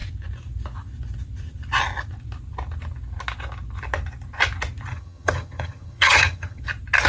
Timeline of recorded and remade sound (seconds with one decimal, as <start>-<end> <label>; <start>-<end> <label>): 0.0-4.9 recorded; 4.9-6.6 remade; 6.6-7.1 recorded